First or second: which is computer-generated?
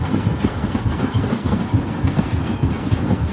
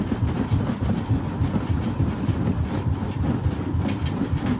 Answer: first